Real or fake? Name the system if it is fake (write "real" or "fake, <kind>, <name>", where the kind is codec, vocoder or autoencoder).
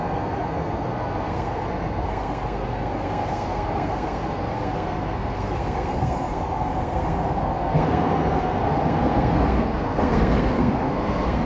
fake, codec, SNAC